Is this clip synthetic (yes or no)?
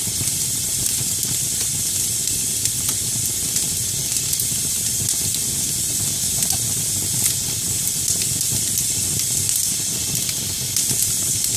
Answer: yes